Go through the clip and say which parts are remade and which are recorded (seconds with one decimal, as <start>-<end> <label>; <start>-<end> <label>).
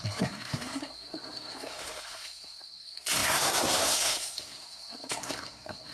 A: 0.0-5.9 remade